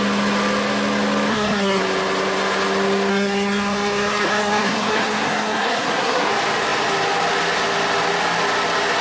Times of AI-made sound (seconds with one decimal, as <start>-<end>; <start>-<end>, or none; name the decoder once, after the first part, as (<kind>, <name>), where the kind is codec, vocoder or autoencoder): 1.3-1.8 (codec, SNAC); 3.1-6.3